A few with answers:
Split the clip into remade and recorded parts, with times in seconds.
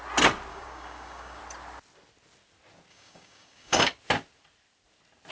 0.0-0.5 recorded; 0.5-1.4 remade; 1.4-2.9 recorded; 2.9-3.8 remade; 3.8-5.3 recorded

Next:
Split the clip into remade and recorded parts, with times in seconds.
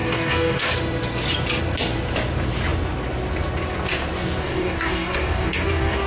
0.0-0.7 remade; 0.7-4.4 recorded; 4.4-6.1 remade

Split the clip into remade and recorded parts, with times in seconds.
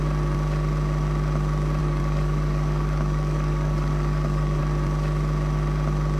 0.0-1.8 recorded; 1.8-4.6 remade; 4.6-6.2 recorded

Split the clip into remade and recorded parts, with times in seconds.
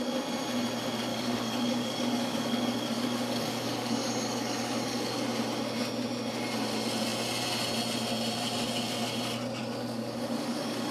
0.0-1.1 recorded; 1.1-5.1 remade; 5.1-9.6 recorded; 9.6-10.9 remade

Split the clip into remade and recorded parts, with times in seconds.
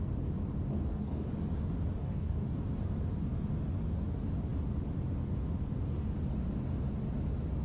0.0-0.7 recorded; 0.7-1.3 remade; 1.3-2.0 recorded; 2.0-2.6 remade; 2.6-7.6 recorded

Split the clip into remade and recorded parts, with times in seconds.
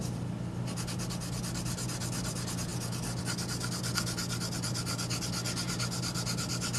0.0-6.8 recorded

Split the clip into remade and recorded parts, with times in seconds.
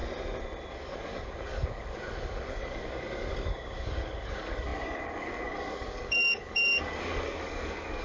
0.0-0.7 recorded; 0.7-8.0 remade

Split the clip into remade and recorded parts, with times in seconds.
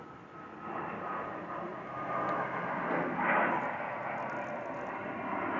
0.0-5.6 recorded